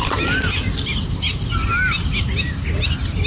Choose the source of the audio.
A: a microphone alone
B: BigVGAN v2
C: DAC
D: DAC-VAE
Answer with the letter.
A